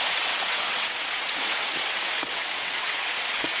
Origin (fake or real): fake